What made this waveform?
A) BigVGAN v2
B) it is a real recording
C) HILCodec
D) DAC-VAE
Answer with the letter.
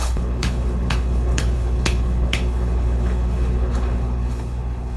C